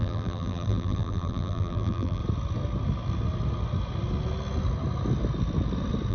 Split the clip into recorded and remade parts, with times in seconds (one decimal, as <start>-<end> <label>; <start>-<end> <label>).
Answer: 0.0-2.2 remade; 2.2-6.1 recorded

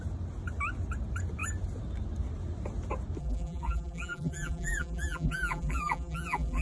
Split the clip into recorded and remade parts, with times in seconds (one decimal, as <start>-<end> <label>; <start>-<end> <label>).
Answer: 0.0-3.2 recorded; 3.2-6.6 remade